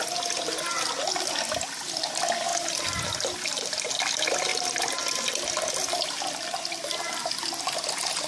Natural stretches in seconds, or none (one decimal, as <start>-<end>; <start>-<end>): 0.0-4.5; 5.4-8.3